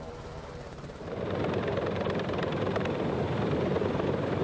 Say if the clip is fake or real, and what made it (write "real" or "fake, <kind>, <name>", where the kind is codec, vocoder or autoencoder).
fake, vocoder, BigVGAN v2